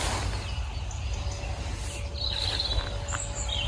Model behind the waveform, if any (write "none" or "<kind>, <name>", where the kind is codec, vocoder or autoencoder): none